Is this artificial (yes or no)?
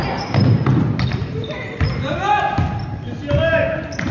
no